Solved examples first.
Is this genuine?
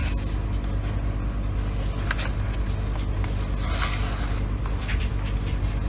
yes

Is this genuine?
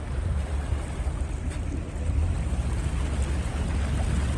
yes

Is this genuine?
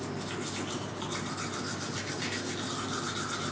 yes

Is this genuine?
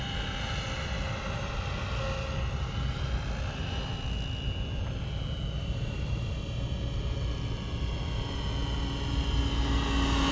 yes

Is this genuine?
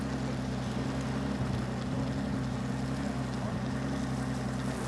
yes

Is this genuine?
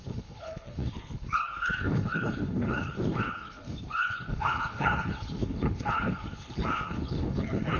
no